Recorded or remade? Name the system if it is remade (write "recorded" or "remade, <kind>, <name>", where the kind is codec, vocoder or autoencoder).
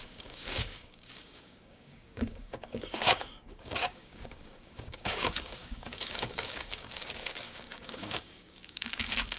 remade, codec, DAC